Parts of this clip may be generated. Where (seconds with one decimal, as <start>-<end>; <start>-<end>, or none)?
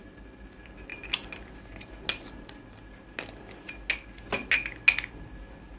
none